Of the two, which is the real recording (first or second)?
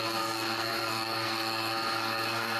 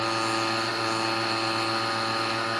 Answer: second